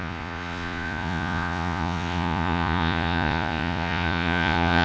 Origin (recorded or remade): remade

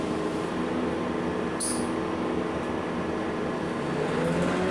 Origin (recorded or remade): recorded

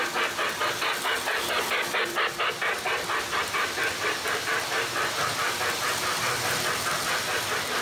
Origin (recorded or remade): recorded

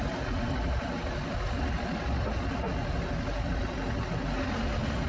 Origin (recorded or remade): recorded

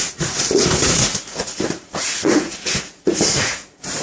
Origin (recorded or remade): remade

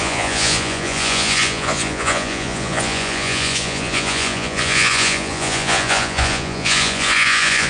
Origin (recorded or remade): remade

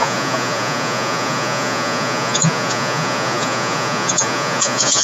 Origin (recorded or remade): remade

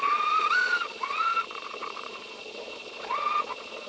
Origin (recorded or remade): remade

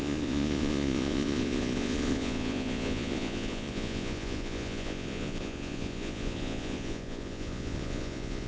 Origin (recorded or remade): remade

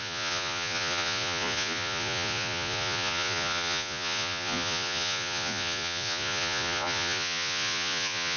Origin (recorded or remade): remade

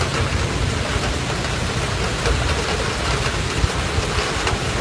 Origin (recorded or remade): recorded